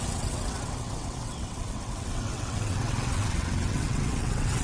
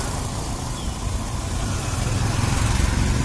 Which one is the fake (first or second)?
first